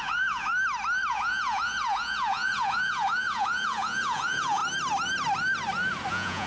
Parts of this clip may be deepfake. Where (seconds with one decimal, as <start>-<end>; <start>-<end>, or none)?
0.0-0.5; 1.1-4.6; 6.1-6.5